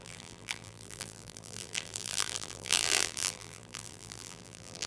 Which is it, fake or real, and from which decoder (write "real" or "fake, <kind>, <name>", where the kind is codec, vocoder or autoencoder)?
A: fake, vocoder, BigVGAN v2